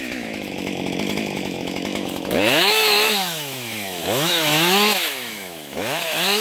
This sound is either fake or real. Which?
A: fake